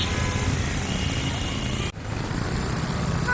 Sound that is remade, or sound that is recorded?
recorded